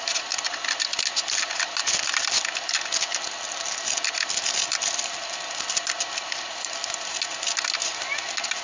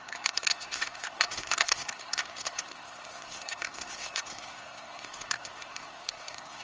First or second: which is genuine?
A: first